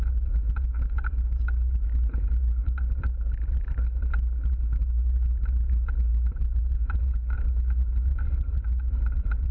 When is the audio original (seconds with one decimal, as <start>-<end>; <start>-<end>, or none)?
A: 0.0-9.5